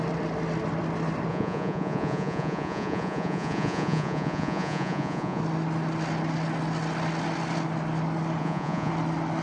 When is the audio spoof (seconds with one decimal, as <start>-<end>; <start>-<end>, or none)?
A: 1.3-5.4; 8.4-8.9